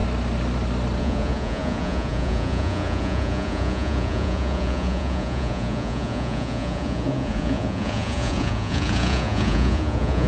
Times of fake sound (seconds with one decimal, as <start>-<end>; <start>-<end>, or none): 1.0-10.3